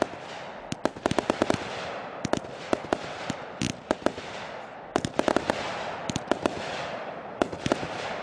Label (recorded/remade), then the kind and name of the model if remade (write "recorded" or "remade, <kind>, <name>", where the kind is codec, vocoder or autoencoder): recorded